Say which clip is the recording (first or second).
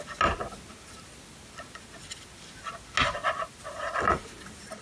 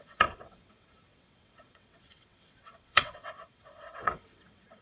first